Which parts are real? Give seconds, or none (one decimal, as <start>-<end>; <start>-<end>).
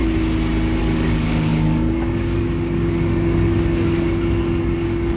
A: 0.0-0.8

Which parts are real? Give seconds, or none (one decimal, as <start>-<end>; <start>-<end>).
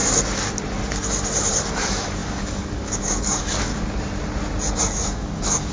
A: 0.0-1.7; 3.7-4.8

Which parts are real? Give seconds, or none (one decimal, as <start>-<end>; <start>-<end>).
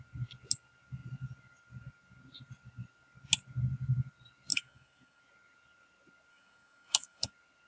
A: 0.0-4.5; 5.2-6.3; 7.3-7.7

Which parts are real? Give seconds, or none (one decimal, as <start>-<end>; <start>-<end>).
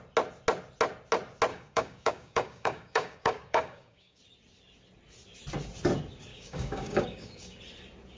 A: 0.0-1.5; 4.2-6.3; 7.6-8.2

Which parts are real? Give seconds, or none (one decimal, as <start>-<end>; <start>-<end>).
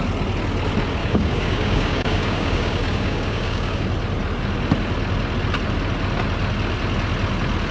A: 0.0-1.0; 3.8-7.7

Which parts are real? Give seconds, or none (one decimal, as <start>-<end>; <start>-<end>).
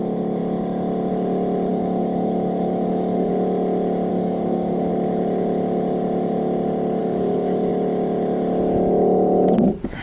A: 0.0-1.7; 3.3-4.1; 4.9-7.0; 7.7-10.0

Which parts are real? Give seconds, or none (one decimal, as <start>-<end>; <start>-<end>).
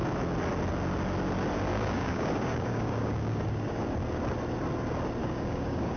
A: 0.0-1.7; 3.9-5.2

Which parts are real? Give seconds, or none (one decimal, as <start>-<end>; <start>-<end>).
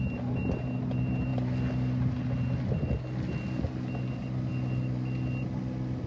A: 0.0-6.1